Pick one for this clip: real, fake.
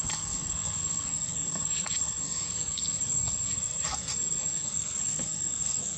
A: fake